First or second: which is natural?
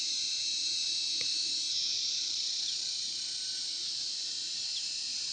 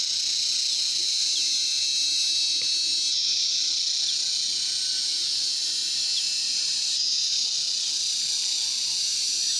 second